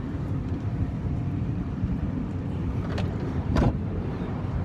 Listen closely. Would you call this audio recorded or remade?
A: remade